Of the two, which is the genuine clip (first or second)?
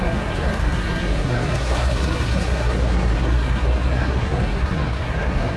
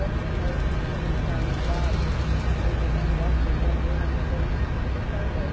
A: second